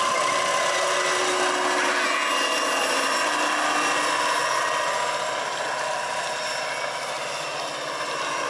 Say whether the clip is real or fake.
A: real